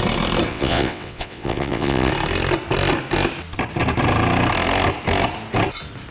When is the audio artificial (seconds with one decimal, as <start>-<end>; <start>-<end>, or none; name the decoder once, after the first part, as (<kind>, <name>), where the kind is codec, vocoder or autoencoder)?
0.5-2.1 (vocoder, WaveNeXt)